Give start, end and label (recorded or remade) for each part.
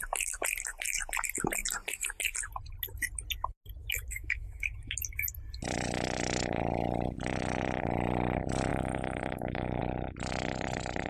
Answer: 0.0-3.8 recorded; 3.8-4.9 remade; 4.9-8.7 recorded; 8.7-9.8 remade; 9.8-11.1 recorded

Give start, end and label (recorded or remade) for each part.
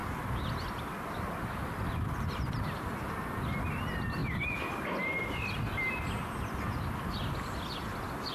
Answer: 0.0-8.3 recorded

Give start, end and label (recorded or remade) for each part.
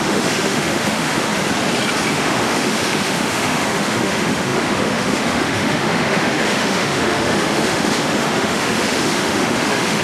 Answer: 0.0-1.3 remade; 1.3-2.1 recorded; 2.1-10.0 remade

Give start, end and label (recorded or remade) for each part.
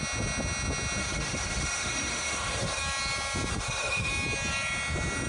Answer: 0.0-1.0 recorded; 1.0-2.8 remade; 2.8-3.5 recorded; 3.5-4.1 remade; 4.1-5.3 recorded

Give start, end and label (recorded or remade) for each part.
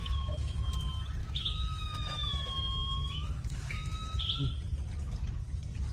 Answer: 0.0-0.6 remade; 0.6-1.2 recorded; 1.2-4.2 remade; 4.2-5.9 recorded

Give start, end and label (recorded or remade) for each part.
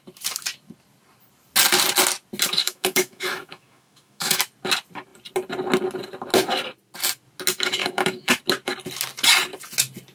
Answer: 0.0-2.6 recorded; 2.6-4.4 remade; 4.4-7.8 recorded; 7.8-8.4 remade; 8.4-10.1 recorded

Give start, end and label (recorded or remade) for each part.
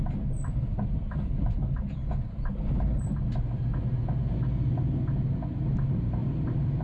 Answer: 0.0-6.8 recorded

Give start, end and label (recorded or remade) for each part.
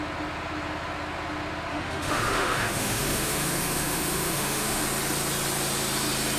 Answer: 0.0-1.7 recorded; 1.7-4.8 remade; 4.8-6.4 recorded